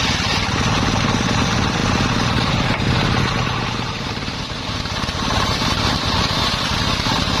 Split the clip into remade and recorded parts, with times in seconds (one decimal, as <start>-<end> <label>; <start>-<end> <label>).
0.0-7.4 recorded